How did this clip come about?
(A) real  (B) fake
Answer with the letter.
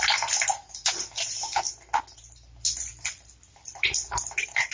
A